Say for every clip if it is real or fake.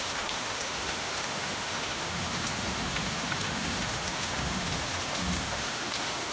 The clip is fake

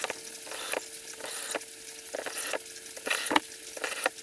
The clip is real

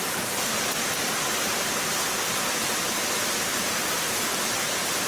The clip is real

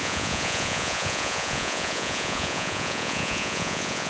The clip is fake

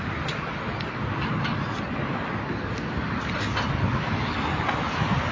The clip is real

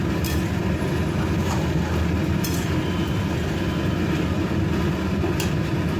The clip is real